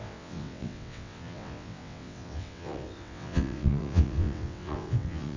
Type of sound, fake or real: fake